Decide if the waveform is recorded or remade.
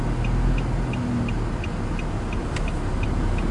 recorded